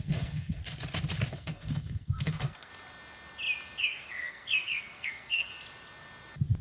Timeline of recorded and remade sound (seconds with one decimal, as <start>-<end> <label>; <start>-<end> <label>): 0.0-0.6 remade; 0.6-1.3 recorded; 1.3-2.7 remade; 2.7-3.8 recorded; 3.8-5.5 remade; 5.5-6.6 recorded